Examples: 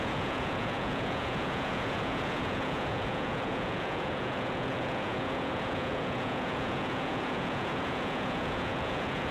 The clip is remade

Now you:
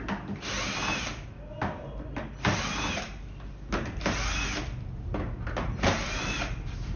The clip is recorded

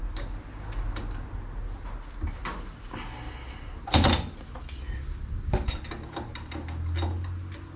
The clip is recorded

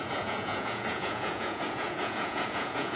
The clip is remade